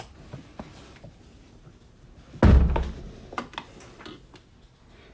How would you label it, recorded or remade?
recorded